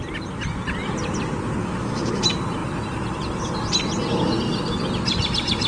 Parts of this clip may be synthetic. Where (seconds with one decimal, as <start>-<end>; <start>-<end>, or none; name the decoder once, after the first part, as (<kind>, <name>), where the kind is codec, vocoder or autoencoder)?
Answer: 1.6-2.2 (autoencoder, DAC-VAE)